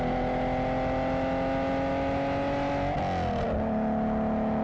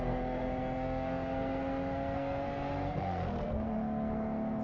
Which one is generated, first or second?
second